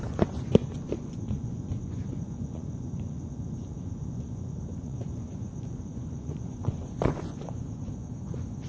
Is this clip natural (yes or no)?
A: no